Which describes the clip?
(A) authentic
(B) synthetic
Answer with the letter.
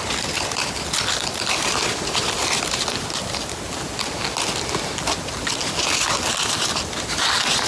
A